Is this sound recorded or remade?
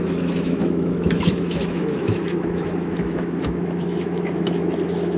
remade